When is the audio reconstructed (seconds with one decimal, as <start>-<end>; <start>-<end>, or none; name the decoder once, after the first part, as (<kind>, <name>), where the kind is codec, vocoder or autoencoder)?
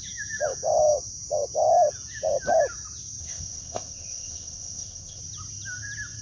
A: 3.2-5.2 (codec, ZipCodec)